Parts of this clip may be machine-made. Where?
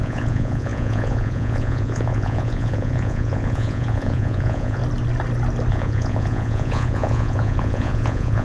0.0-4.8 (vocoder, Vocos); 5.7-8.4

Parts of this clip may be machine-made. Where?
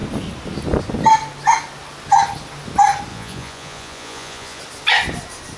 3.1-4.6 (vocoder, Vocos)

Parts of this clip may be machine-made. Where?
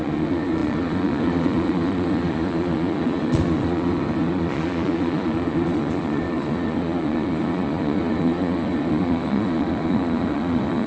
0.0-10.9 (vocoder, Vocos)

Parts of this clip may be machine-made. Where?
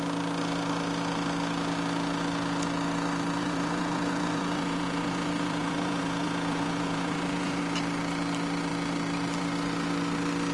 3.4-7.6 (vocoder, Vocos)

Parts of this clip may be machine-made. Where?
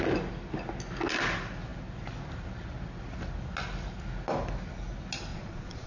5.3-5.9 (vocoder, Vocos)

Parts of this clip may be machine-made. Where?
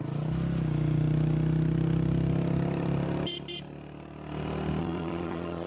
4.8-5.7 (vocoder, Vocos)